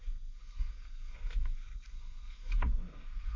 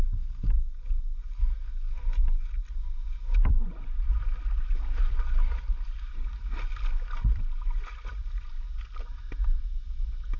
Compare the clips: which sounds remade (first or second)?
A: first